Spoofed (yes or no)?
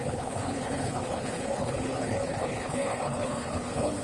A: yes